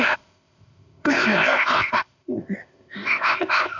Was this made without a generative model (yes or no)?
no